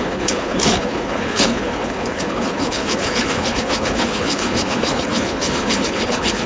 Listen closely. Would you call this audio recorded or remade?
remade